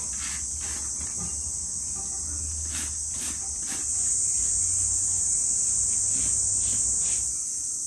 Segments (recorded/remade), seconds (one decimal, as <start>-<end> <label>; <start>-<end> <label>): 0.0-7.9 recorded